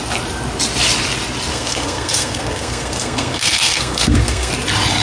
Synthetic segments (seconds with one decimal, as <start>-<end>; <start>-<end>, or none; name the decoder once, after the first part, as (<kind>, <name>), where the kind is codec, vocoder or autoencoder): 1.5-4.5 (codec, SNAC)